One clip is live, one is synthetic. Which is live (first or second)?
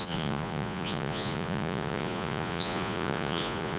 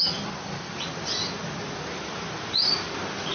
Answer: second